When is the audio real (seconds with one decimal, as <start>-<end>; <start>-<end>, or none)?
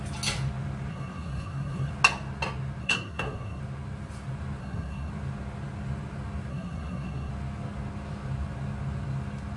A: 0.0-0.9; 1.9-2.8; 3.6-4.6; 5.1-6.5; 7.3-9.6